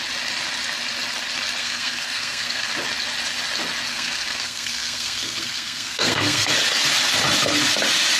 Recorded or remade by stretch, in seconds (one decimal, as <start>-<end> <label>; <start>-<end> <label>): 0.0-1.6 recorded; 1.6-2.7 remade; 2.7-3.9 recorded; 3.9-6.5 remade; 6.5-8.2 recorded